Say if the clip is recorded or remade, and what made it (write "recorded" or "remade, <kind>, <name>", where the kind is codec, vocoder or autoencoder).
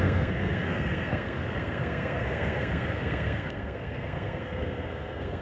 remade, codec, SNAC